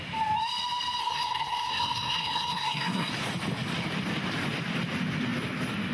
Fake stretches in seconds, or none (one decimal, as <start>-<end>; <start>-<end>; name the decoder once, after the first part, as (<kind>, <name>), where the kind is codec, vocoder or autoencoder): 1.0-3.1 (codec, SNAC)